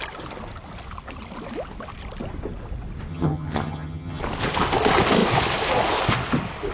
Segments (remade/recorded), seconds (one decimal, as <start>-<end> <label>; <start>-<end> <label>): 0.0-3.1 recorded; 3.1-4.2 remade; 4.2-6.7 recorded